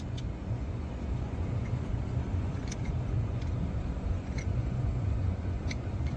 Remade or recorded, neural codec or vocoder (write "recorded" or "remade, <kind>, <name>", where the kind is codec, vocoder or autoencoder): remade, vocoder, Vocos